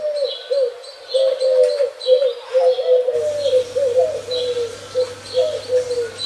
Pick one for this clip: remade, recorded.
recorded